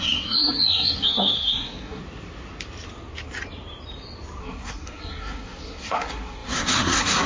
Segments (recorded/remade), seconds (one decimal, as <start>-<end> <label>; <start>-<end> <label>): 0.0-2.0 remade; 2.0-4.4 recorded; 4.4-7.3 remade